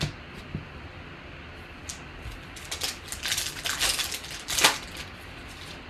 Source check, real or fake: real